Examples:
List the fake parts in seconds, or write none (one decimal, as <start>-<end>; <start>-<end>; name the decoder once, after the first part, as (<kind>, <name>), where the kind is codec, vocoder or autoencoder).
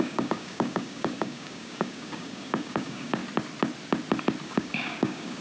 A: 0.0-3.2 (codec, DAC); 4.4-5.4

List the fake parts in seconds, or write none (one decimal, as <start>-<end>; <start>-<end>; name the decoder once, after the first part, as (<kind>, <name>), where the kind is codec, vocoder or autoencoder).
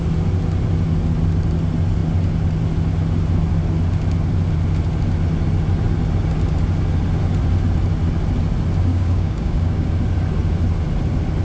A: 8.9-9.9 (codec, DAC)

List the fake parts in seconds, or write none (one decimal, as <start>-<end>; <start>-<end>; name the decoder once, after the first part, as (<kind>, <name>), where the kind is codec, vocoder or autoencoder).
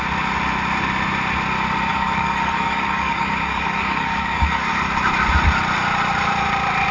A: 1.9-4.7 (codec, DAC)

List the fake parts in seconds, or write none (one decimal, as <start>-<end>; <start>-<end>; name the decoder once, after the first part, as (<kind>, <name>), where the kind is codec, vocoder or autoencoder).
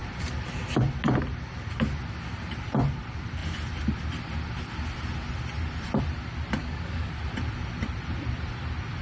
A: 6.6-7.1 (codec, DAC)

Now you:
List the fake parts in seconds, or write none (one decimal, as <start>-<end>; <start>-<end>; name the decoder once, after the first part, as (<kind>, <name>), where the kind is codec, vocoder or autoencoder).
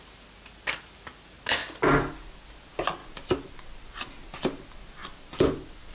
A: none